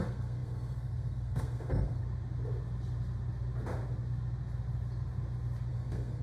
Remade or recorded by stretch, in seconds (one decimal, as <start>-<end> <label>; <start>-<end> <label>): 0.0-2.0 remade; 2.0-5.7 recorded; 5.7-6.2 remade